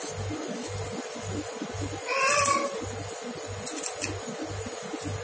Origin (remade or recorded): recorded